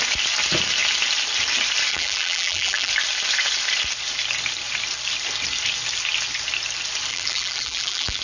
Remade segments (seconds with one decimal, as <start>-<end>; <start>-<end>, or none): 1.9-2.9; 7.1-8.2